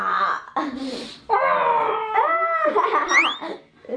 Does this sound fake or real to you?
real